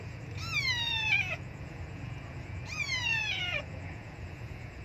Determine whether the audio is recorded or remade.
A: remade